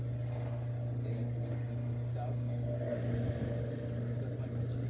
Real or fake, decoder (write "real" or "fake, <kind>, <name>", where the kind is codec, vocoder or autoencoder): real